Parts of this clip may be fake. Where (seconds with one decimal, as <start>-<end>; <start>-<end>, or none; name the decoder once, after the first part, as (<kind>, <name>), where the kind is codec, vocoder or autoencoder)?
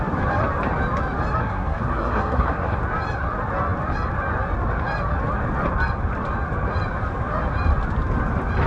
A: 1.4-2.8 (codec, SNAC)